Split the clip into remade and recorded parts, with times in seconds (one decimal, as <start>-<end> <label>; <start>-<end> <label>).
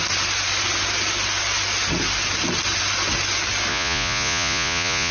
0.0-3.7 recorded; 3.7-5.1 remade